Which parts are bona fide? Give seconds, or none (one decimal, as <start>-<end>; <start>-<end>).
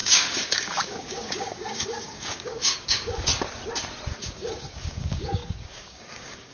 3.3-4.2